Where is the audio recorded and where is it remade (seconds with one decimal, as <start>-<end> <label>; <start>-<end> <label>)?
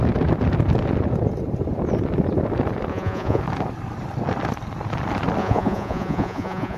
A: 0.0-2.9 recorded; 2.9-3.4 remade; 3.4-5.4 recorded; 5.4-6.8 remade